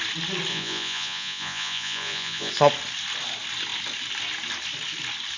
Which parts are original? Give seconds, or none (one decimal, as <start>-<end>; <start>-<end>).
0.0-0.5; 2.5-5.4